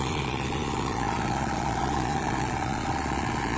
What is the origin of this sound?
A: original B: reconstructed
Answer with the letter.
B